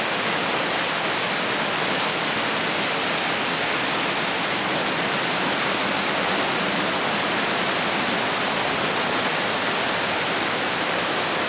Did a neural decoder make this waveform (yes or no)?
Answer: no